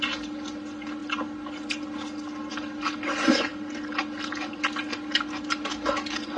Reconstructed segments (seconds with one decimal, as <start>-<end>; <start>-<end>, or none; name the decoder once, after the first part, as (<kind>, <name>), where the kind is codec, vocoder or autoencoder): none